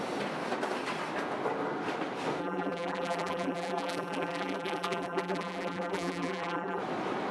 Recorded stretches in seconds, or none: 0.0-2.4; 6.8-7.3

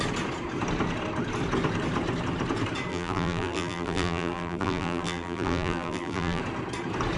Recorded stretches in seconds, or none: 0.0-2.9; 6.4-7.2

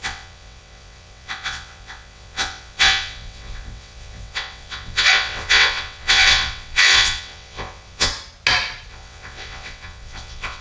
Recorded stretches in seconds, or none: 8.1-8.9

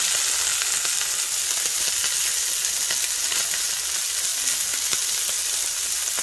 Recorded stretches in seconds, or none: 0.0-6.2

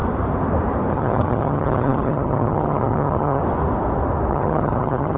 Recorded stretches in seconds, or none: 0.0-0.9; 3.4-4.3

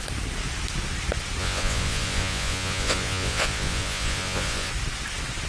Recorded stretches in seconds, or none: 0.0-1.4; 4.7-5.5

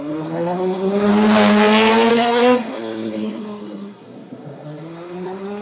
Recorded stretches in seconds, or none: 1.1-2.1

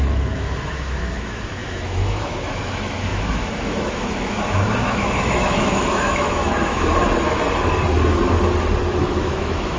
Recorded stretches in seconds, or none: 7.0-9.0